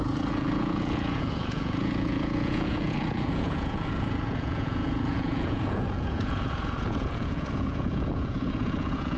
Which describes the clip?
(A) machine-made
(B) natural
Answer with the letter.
A